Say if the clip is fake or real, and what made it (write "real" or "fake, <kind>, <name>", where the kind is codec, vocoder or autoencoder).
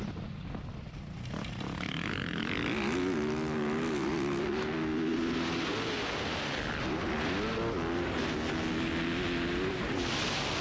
real